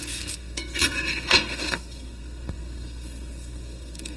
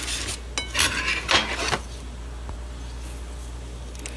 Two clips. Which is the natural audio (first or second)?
second